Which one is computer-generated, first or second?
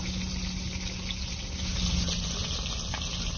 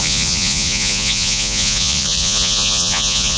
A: second